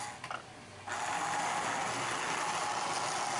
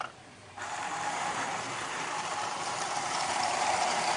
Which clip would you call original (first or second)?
first